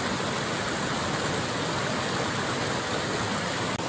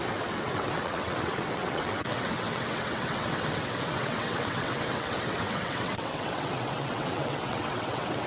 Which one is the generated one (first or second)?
second